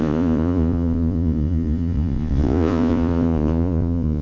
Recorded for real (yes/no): no